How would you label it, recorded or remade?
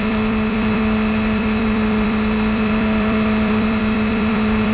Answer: remade